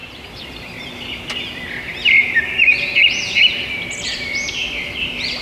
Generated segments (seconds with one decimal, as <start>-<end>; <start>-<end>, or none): 0.0-1.2; 4.6-5.4